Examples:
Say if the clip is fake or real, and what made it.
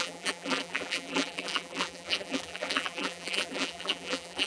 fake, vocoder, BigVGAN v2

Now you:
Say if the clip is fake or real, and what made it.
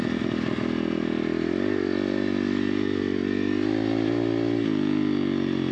real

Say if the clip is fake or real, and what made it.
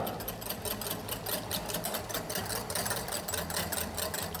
real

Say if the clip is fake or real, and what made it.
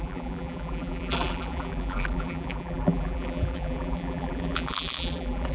fake, vocoder, BigVGAN v2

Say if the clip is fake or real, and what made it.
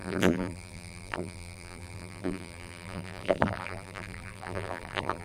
fake, vocoder, BigVGAN v2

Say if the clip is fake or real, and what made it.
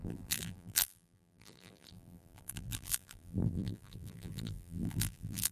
fake, vocoder, BigVGAN v2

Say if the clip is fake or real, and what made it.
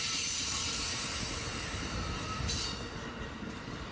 fake, vocoder, BigVGAN v2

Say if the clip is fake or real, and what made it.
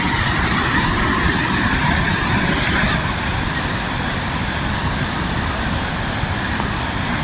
fake, vocoder, BigVGAN v2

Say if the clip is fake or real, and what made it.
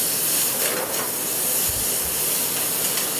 real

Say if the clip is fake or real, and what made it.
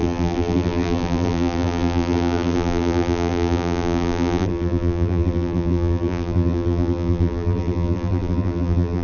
fake, vocoder, BigVGAN v2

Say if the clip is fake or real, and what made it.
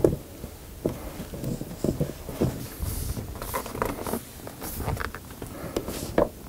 real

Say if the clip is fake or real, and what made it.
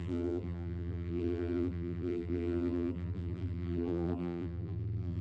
fake, vocoder, BigVGAN v2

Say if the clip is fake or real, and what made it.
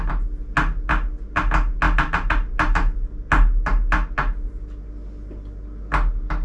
real